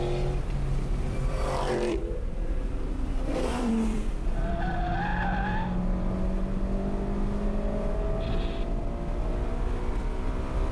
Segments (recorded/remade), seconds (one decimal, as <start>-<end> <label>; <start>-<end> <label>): 0.0-0.7 recorded; 0.7-4.5 remade; 4.5-10.7 recorded